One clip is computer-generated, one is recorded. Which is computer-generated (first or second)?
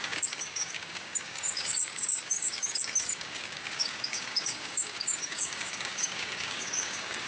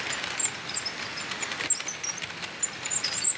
first